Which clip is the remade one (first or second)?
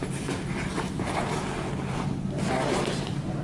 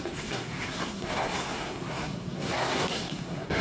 second